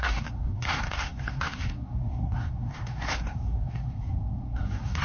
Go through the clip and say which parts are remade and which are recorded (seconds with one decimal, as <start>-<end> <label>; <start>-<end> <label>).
0.0-5.0 remade